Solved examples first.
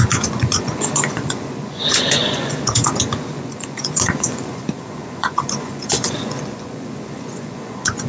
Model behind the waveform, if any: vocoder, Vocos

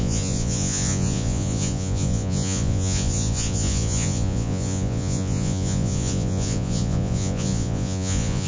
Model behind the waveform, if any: vocoder, Vocos